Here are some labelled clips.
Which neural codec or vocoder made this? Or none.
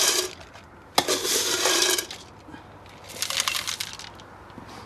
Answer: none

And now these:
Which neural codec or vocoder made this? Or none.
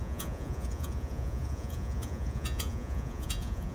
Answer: vocoder, Vocos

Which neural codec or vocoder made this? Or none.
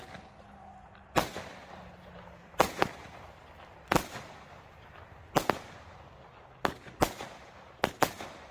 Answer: none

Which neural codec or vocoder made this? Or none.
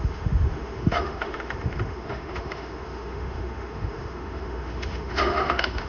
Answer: autoencoder, DAC-VAE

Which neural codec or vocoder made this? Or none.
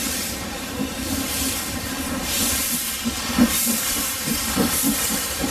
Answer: vocoder, BigVGAN v2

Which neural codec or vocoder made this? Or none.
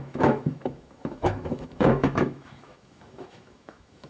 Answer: autoencoder, DAC-VAE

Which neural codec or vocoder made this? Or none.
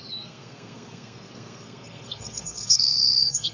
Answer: codec, SNAC